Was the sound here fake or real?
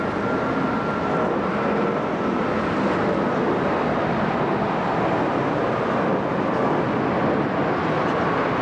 real